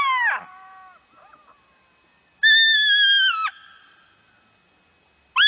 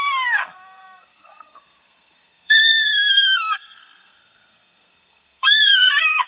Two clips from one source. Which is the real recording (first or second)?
first